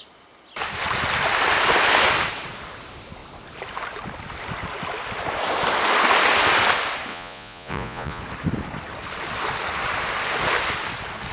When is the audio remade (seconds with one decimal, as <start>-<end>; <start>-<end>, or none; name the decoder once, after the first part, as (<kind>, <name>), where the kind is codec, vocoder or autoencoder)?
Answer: 7.1-8.2 (vocoder, Vocos)